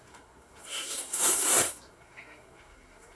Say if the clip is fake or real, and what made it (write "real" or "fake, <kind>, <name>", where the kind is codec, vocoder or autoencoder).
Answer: fake, codec, SNAC